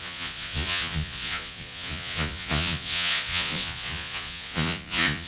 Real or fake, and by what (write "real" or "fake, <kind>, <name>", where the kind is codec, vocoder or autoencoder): fake, vocoder, Vocos